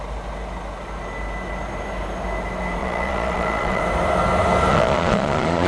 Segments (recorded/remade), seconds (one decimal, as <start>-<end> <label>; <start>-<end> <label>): 0.0-2.8 recorded; 2.8-3.8 remade; 3.8-4.7 recorded; 4.7-5.7 remade